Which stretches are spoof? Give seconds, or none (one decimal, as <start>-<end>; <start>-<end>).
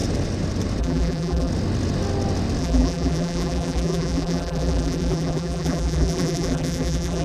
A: 0.8-1.5; 2.6-7.2